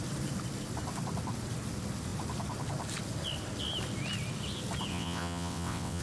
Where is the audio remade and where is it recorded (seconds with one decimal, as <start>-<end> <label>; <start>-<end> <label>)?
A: 0.0-4.9 recorded; 4.9-6.0 remade

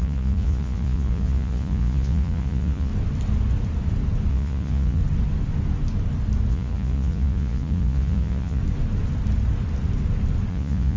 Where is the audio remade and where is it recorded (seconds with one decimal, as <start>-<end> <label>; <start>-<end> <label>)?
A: 0.0-2.9 remade; 2.9-4.3 recorded; 4.3-5.0 remade; 5.0-6.5 recorded; 6.5-8.6 remade; 8.6-10.5 recorded; 10.5-11.0 remade

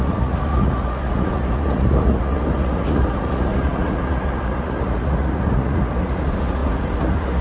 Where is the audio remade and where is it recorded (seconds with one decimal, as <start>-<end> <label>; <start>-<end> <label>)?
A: 0.0-7.4 remade

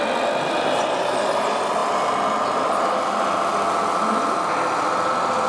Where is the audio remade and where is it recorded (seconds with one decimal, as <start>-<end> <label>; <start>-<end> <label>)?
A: 0.0-5.5 recorded

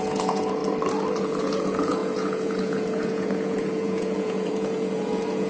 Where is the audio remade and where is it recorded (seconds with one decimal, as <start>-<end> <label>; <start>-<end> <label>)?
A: 0.0-0.6 remade; 0.6-1.2 recorded; 1.2-5.5 remade

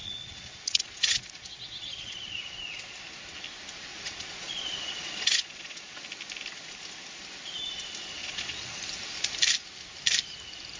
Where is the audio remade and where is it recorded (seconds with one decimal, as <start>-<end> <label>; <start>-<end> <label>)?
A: 0.0-2.8 remade; 2.8-3.9 recorded; 3.9-6.0 remade; 6.0-8.2 recorded; 8.2-8.8 remade; 8.8-10.8 recorded

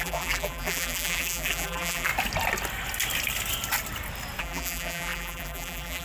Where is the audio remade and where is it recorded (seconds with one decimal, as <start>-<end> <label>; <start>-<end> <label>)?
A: 0.0-2.1 remade; 2.1-4.4 recorded; 4.4-6.0 remade

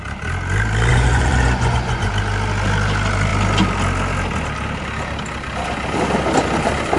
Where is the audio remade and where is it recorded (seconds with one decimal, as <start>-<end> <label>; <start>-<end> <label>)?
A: 0.0-0.9 recorded; 0.9-2.1 remade; 2.1-7.0 recorded